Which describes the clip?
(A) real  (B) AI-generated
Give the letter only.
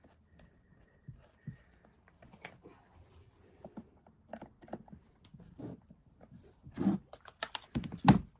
A